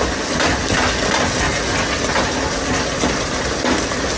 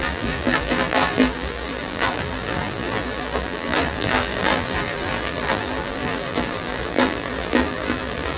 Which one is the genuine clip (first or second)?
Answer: first